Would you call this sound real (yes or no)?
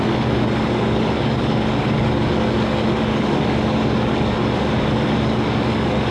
no